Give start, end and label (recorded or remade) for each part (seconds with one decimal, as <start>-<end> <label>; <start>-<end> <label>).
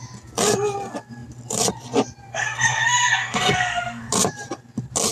0.0-2.3 recorded; 2.3-4.1 remade; 4.1-5.1 recorded